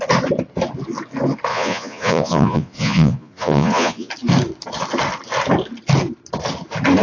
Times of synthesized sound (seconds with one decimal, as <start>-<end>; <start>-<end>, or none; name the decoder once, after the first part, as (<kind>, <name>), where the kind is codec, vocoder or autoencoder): 1.5-4.1 (vocoder, Vocos)